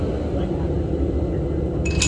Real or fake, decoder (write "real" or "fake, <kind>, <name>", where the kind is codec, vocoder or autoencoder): real